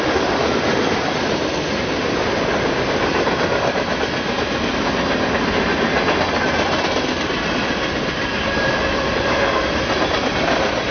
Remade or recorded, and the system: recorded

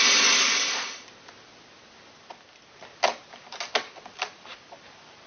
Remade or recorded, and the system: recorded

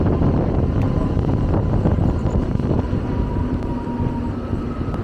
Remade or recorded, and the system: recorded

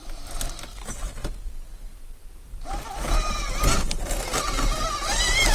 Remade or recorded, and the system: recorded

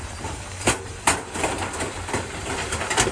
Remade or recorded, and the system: remade, vocoder, BigVGAN v2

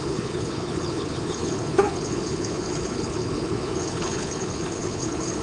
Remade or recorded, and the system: remade, codec, HILCodec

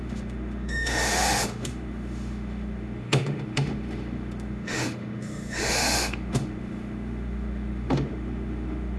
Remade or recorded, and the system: remade, autoencoder, DAC-VAE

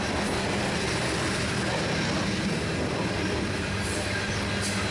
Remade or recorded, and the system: recorded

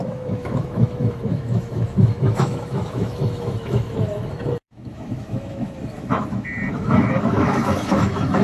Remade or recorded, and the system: remade, autoencoder, DAC-VAE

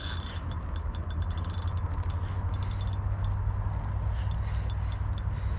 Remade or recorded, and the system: recorded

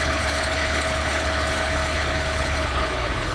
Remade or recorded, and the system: remade, codec, HILCodec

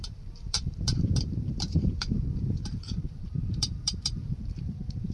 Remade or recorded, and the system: remade, vocoder, BigVGAN v2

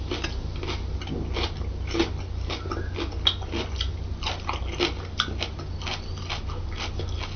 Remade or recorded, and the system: recorded